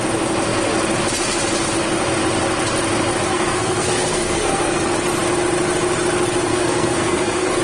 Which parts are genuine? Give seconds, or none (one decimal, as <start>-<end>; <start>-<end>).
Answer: 0.0-3.3; 4.8-6.5